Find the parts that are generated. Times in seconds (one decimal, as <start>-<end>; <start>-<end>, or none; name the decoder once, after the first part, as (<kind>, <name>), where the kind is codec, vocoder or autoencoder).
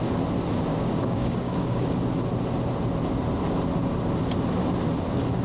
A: 0.7-1.9 (codec, DAC)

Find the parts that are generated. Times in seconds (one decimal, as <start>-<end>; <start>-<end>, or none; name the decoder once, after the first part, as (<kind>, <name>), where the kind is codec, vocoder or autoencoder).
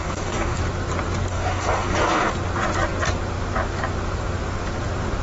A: 0.0-0.6 (codec, DAC); 1.3-2.3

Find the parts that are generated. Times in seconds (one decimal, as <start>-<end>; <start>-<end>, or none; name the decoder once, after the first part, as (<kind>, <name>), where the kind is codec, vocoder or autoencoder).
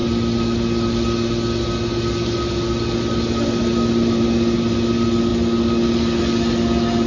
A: none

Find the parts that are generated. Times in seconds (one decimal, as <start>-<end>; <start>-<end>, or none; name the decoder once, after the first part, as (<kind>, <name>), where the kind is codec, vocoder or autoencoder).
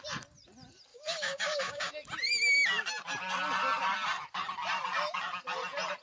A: 0.9-1.9 (codec, DAC)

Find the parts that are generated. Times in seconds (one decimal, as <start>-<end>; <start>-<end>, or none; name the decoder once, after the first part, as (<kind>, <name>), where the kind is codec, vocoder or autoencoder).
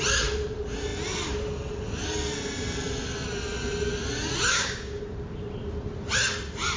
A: 4.5-5.0 (codec, DAC)